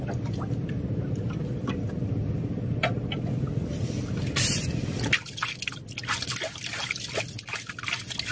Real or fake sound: real